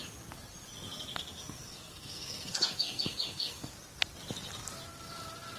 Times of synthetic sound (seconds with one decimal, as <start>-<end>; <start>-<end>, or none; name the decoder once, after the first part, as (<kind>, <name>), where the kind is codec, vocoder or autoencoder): 1.1-3.7 (codec, SNAC)